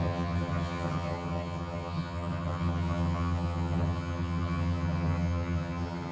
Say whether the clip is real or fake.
fake